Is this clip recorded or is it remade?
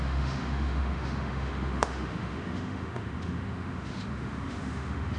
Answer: remade